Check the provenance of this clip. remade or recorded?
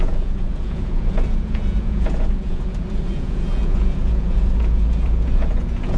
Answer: remade